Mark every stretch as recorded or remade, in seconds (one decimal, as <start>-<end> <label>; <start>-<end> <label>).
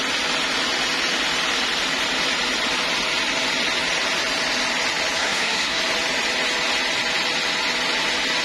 0.0-5.2 recorded; 5.2-5.8 remade; 5.8-8.4 recorded